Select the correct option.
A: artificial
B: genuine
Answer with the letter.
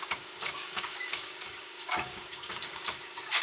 A